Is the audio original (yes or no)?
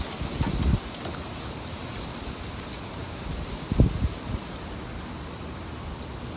yes